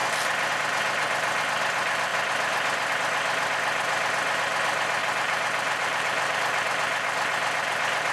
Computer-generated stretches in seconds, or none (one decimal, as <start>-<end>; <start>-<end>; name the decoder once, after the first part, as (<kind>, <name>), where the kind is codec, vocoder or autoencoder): 5.0-6.4 (vocoder, BigVGAN v2)